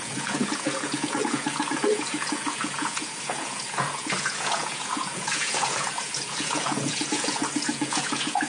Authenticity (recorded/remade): remade